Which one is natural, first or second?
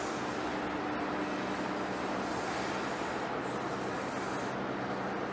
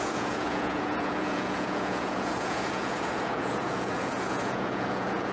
first